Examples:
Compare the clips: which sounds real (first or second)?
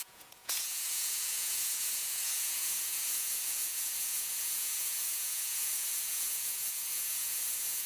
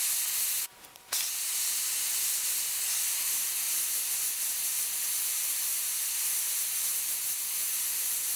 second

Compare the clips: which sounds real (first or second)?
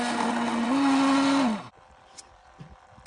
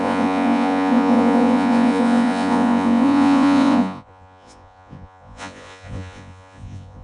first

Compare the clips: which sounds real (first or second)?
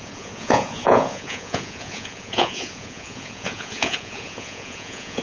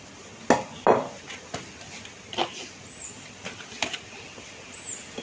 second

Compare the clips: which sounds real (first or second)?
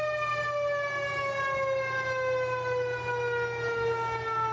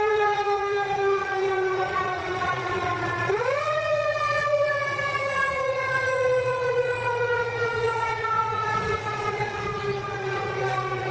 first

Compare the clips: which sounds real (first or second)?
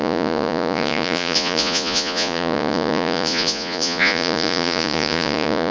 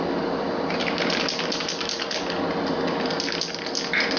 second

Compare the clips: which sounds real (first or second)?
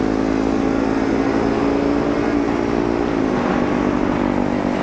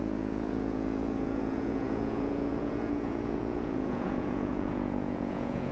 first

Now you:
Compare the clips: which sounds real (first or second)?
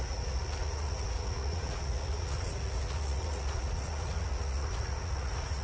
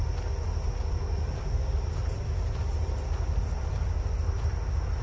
second